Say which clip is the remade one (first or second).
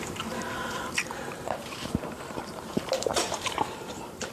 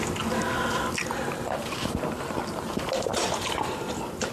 first